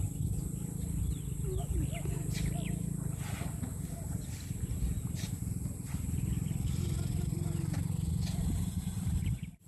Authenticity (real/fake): real